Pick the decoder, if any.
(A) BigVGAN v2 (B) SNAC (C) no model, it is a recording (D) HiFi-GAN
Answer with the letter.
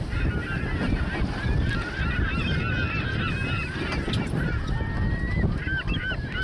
C